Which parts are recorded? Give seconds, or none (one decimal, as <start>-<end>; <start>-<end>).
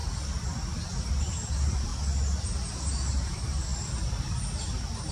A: 0.0-1.1; 1.9-2.7; 3.7-5.1